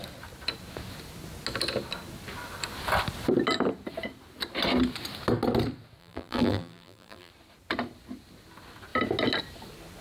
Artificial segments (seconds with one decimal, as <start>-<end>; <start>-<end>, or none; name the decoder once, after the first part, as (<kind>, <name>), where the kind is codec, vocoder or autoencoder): 6.0-7.3 (vocoder, BigVGAN v2)

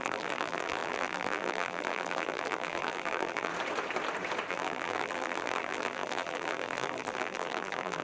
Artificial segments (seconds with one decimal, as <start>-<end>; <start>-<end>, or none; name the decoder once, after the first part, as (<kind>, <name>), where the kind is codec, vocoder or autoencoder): 0.0-3.5 (vocoder, BigVGAN v2); 4.5-8.0

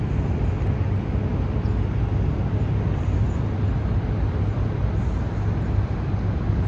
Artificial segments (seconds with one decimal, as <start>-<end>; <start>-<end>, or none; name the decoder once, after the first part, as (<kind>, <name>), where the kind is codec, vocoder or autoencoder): none